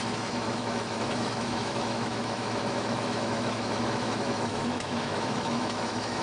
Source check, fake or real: fake